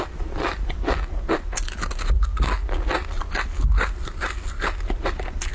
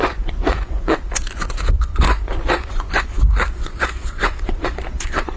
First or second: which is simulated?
second